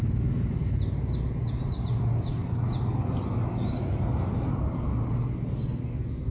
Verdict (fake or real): real